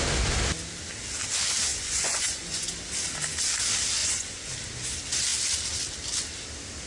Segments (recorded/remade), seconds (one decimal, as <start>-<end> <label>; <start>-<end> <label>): 0.0-1.7 recorded; 1.7-2.7 remade; 2.7-4.0 recorded; 4.0-4.5 remade; 4.5-6.9 recorded